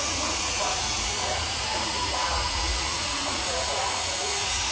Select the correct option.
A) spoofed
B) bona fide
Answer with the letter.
A